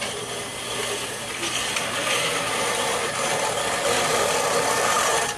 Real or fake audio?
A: real